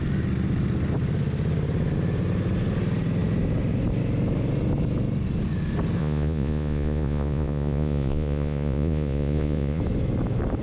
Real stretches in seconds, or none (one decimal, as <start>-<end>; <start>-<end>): 0.0-6.0; 9.8-10.6